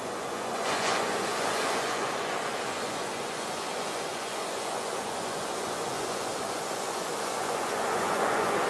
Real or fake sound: fake